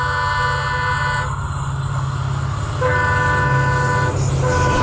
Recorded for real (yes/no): yes